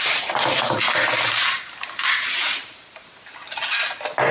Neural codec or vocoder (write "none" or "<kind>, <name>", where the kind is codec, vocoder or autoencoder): none